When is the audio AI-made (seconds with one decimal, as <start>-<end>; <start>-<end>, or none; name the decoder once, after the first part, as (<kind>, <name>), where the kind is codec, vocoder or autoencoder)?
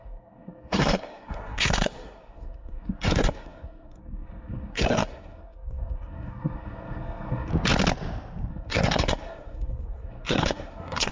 0.0-7.5 (codec, SNAC); 8.5-11.1